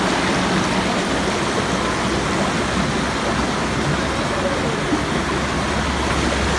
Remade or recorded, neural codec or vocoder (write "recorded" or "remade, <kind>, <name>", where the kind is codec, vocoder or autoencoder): recorded